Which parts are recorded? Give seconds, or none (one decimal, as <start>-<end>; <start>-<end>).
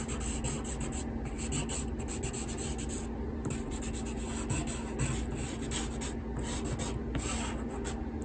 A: 0.0-8.2